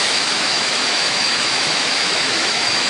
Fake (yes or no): yes